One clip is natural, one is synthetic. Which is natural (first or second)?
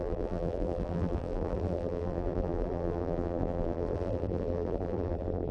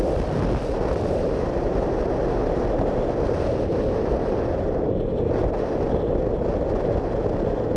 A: second